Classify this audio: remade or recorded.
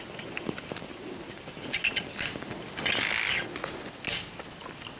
recorded